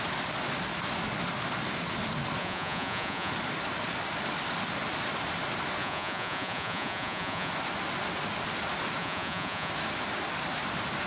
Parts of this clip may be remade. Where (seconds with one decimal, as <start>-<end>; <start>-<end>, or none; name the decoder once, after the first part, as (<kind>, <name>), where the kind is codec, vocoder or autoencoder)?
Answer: 2.4-3.3 (vocoder, Vocos); 5.8-7.5; 9.0-9.7